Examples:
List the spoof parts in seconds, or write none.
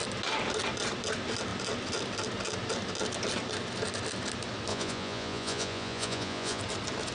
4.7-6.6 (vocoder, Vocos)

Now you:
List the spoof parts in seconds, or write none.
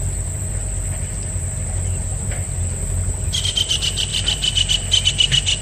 none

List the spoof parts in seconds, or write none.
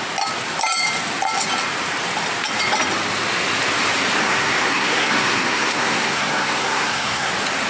4.2-7.3 (codec, SNAC)